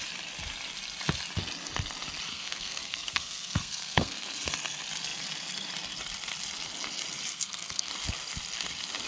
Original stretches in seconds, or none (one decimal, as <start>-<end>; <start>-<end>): 0.0-2.3; 4.5-7.3; 7.9-9.1